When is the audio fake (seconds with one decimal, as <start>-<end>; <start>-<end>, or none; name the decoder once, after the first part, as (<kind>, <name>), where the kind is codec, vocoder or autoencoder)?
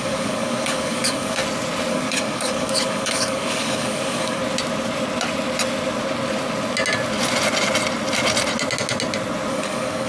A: 0.0-1.4 (codec, DAC); 1.9-4.4; 9.5-10.1